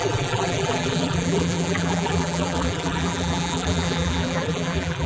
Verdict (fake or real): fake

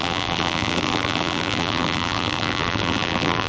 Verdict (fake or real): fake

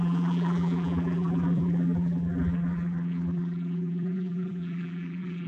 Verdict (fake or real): fake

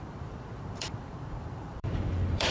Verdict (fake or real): fake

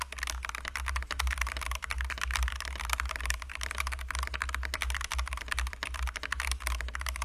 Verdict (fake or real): real